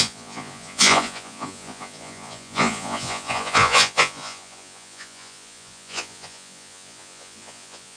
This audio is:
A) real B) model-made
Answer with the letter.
B